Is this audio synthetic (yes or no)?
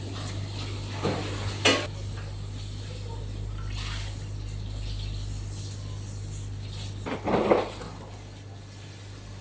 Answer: no